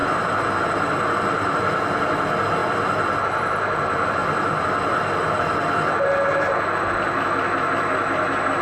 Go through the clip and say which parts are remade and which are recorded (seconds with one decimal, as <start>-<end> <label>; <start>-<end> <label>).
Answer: 0.0-8.6 recorded